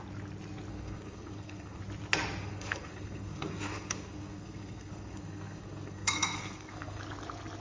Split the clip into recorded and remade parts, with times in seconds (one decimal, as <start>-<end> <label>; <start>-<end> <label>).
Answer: 0.0-0.7 recorded; 0.7-1.8 remade; 1.8-2.4 recorded; 2.4-7.0 remade; 7.0-7.6 recorded